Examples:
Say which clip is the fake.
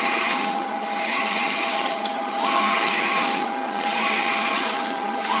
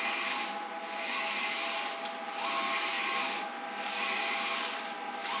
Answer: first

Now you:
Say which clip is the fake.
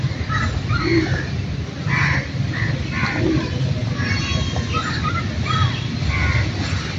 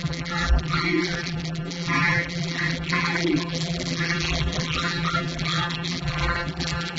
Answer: second